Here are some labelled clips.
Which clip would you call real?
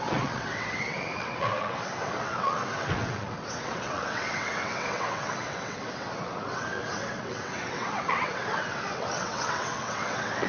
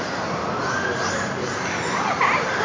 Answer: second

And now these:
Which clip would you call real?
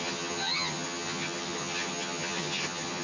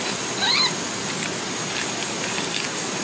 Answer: second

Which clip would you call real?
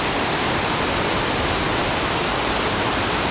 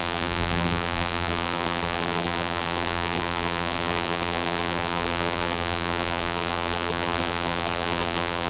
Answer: first